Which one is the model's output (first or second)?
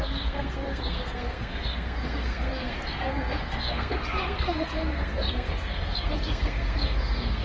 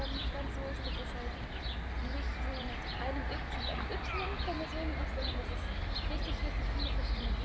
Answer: first